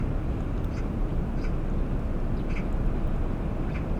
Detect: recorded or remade recorded